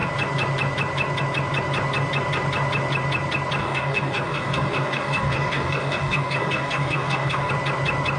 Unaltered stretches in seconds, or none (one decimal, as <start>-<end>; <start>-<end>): 0.0-3.6; 7.5-8.2